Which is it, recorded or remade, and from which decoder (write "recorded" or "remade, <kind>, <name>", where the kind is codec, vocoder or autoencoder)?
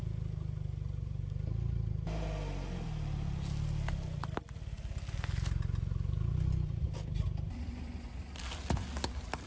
recorded